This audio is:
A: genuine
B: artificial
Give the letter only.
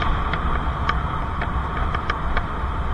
A